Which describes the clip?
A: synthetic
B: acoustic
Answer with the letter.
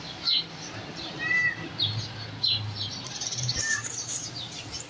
A